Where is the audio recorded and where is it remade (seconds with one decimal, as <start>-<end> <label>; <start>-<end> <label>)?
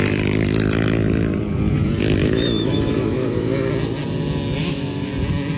0.0-2.2 recorded; 2.2-3.7 remade; 3.7-4.6 recorded; 4.6-5.1 remade; 5.1-5.6 recorded